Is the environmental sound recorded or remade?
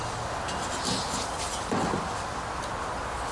recorded